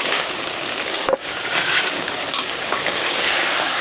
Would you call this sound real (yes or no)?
no